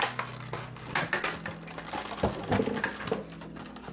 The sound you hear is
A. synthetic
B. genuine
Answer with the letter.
B